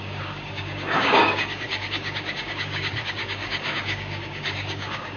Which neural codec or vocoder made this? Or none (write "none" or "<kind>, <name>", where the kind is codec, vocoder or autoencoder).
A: codec, DAC